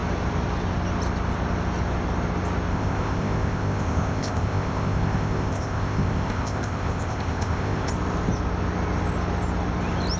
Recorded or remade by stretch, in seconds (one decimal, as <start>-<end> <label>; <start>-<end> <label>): 0.0-2.7 recorded; 2.7-7.9 remade; 7.9-10.2 recorded